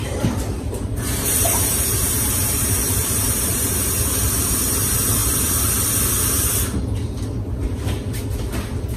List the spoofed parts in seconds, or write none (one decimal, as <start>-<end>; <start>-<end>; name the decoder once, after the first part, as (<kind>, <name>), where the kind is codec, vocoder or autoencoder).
0.0-4.0 (vocoder, BigVGAN v2)